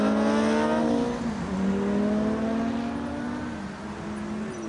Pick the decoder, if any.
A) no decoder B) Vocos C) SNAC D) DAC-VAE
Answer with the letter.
A